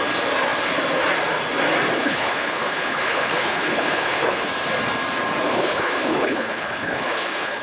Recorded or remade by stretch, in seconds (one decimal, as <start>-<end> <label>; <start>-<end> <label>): 0.0-2.0 recorded; 2.0-4.5 remade; 4.5-5.5 recorded; 5.5-7.6 remade